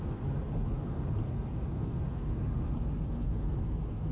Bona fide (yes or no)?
no